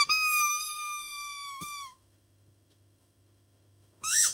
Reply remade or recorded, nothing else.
remade